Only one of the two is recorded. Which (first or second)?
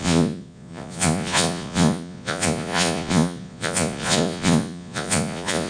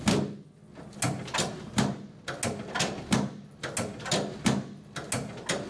second